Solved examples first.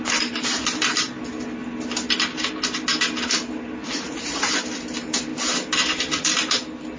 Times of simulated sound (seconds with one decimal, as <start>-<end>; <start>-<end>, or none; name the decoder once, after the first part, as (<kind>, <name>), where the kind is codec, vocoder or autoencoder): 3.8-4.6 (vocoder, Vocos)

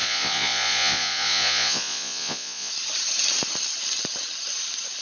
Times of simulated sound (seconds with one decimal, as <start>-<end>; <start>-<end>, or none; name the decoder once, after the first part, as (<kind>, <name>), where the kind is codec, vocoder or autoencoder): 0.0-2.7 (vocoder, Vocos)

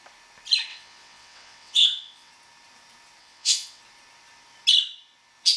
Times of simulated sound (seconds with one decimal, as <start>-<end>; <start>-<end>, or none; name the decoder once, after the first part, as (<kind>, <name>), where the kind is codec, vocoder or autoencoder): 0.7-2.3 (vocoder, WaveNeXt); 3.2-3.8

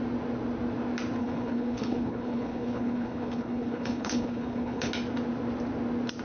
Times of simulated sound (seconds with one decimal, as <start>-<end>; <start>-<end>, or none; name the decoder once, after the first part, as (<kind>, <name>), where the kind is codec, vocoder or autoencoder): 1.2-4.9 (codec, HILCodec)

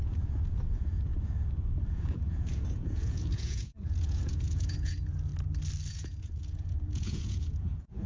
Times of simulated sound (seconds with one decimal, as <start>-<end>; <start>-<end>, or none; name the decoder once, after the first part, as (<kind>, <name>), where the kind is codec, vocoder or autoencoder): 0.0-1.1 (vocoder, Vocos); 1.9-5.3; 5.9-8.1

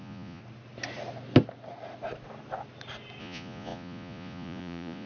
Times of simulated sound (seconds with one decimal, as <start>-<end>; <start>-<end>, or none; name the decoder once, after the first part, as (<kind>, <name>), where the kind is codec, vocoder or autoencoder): 0.0-0.4 (vocoder, Vocos); 3.2-5.1